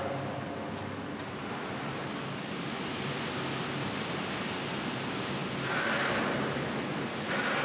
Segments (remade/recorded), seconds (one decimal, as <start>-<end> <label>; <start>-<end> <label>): 0.0-7.6 recorded